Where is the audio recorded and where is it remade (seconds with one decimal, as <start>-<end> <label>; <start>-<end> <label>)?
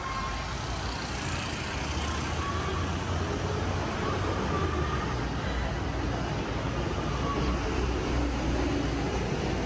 0.0-9.7 recorded